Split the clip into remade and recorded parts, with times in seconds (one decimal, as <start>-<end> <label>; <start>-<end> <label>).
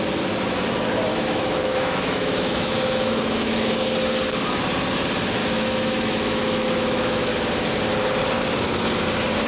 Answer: 0.0-1.1 recorded; 1.1-3.8 remade; 3.8-5.4 recorded; 5.4-7.3 remade; 7.3-9.5 recorded